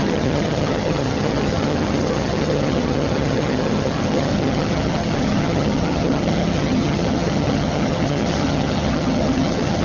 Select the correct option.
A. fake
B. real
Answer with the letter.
A